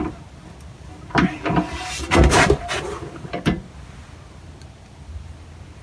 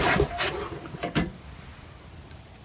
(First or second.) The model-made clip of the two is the second